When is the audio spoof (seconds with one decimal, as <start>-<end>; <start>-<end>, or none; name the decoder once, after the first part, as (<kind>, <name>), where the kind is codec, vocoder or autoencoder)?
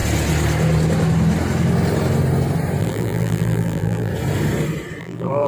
2.8-4.1 (vocoder, BigVGAN v2); 5.0-5.5